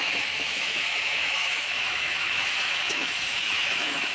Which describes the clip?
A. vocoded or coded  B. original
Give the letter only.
A